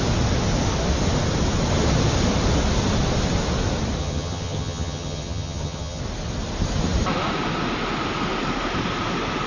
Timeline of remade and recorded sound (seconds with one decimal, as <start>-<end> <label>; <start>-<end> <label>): 0.0-4.0 recorded; 4.0-6.0 remade; 6.0-9.5 recorded